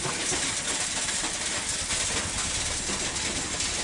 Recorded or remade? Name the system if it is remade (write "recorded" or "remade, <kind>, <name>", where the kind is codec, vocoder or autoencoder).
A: recorded